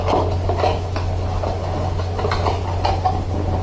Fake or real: real